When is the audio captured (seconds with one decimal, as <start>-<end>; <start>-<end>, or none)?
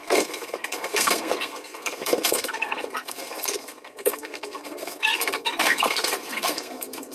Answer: none